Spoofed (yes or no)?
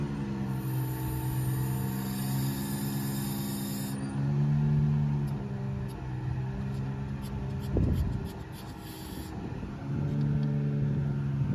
no